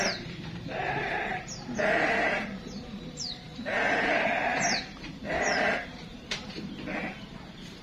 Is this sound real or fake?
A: fake